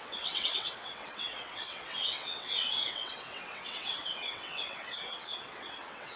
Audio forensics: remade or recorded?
remade